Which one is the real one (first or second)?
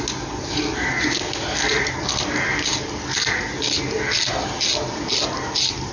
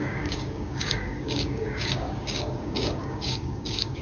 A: first